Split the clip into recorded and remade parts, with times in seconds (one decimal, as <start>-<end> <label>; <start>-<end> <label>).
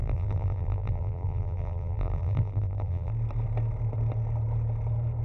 0.0-3.1 remade; 3.1-5.2 recorded